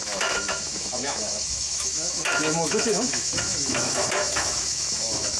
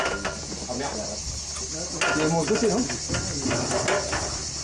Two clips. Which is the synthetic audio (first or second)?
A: first